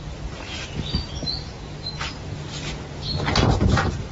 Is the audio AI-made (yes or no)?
no